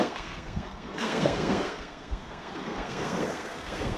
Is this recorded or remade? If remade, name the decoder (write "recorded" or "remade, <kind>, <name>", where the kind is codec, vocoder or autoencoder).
remade, codec, SNAC